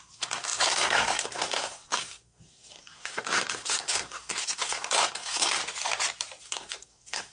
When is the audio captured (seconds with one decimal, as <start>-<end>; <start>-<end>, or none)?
5.6-6.4